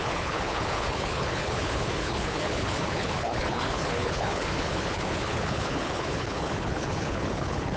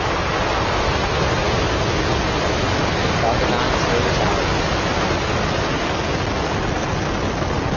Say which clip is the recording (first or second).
second